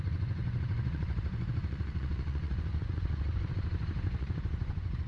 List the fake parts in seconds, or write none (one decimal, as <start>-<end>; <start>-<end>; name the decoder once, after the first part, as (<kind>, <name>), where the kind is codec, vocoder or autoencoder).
0.0-5.1 (vocoder, Vocos)